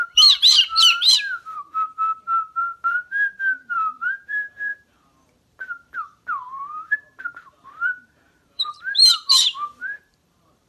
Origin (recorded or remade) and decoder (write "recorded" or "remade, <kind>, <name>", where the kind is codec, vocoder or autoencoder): remade, vocoder, BigVGAN v2